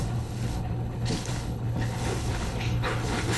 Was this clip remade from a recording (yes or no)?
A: yes